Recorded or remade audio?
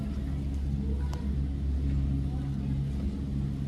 recorded